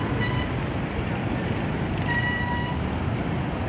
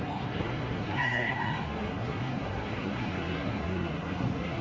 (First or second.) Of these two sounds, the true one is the first